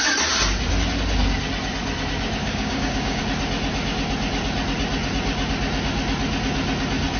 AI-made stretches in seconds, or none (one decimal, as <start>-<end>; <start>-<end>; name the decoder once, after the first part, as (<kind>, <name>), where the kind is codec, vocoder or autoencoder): 2.4-3.2 (codec, DAC)